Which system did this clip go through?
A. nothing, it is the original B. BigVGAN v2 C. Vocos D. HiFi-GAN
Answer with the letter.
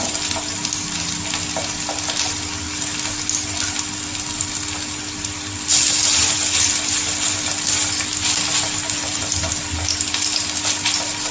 A